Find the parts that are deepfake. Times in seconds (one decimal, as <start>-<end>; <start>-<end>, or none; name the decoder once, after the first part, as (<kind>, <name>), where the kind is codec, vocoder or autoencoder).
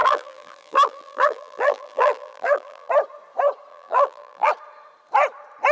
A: 0.0-2.9 (vocoder, BigVGAN v2); 3.7-4.5